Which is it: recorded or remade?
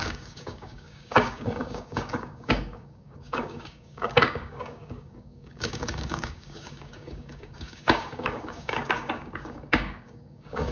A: remade